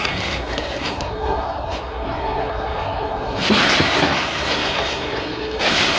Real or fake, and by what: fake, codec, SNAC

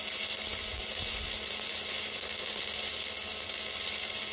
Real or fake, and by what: real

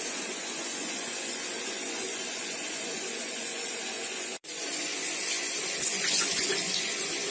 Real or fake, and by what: fake, vocoder, Vocos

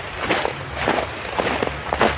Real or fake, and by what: real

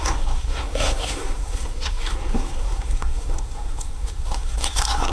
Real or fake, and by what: fake, codec, SNAC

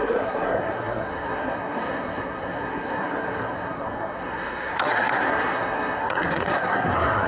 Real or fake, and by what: fake, codec, SNAC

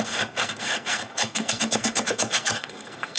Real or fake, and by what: fake, codec, SNAC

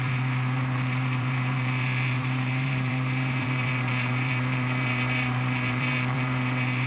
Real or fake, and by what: fake, vocoder, BigVGAN v2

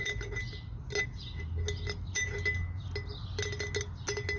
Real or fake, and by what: real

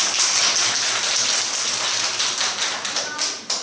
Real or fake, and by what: real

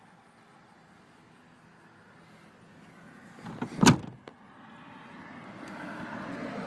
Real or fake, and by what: real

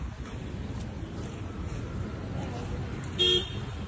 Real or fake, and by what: real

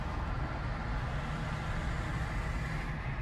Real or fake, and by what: real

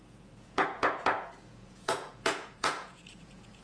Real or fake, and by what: fake, vocoder, Vocos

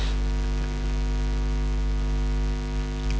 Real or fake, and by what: real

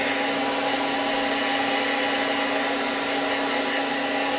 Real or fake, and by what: real